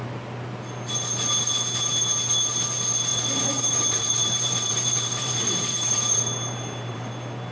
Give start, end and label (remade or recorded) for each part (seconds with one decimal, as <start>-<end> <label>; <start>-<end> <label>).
0.0-3.1 recorded; 3.1-7.1 remade; 7.1-7.5 recorded